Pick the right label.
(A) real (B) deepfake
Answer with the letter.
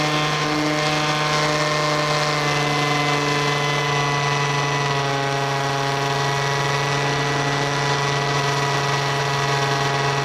A